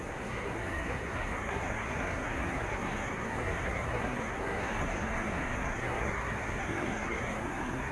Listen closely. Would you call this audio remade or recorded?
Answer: remade